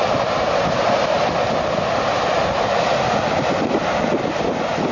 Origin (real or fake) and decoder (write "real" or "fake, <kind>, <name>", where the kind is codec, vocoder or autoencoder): real